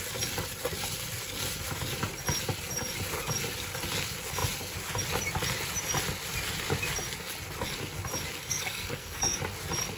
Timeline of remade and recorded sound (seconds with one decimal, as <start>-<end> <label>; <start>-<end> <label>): 0.0-8.4 recorded; 8.4-9.4 remade; 9.4-10.0 recorded